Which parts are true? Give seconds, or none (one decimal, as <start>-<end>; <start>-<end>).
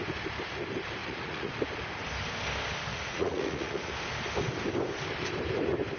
0.0-1.0; 1.5-2.9; 3.9-6.0